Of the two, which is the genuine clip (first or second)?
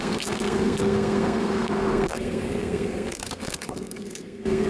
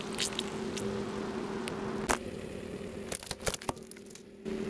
second